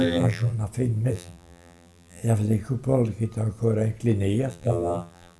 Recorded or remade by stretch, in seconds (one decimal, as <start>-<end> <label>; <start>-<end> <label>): 0.0-0.5 remade; 0.5-1.1 recorded; 1.1-2.2 remade; 2.2-4.5 recorded; 4.5-5.4 remade